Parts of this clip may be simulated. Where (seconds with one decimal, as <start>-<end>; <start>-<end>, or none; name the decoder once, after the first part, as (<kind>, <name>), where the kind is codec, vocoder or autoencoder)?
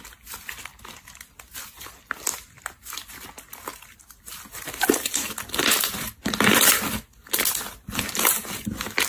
3.7-7.4 (vocoder, BigVGAN v2)